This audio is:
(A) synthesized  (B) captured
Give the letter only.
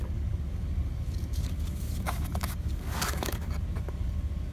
A